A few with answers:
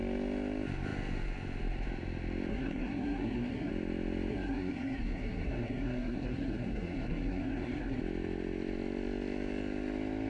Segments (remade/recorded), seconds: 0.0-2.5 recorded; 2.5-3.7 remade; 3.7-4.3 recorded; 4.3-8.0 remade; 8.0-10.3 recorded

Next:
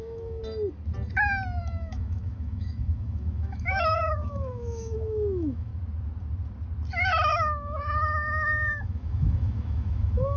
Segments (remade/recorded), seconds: 0.0-0.4 remade; 0.4-1.6 recorded; 1.6-5.7 remade; 5.7-7.1 recorded; 7.1-10.4 remade

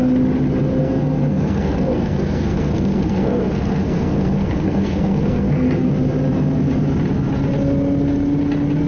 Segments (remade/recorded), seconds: 0.0-0.8 recorded; 0.8-5.9 remade; 5.9-8.9 recorded

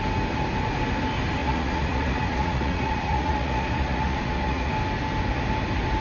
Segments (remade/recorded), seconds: 0.0-1.4 recorded; 1.4-4.7 remade; 4.7-6.0 recorded

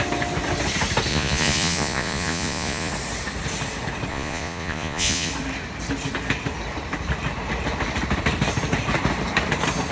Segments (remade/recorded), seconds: 0.0-1.1 recorded; 1.1-2.9 remade; 2.9-4.1 recorded; 4.1-5.3 remade; 5.3-9.9 recorded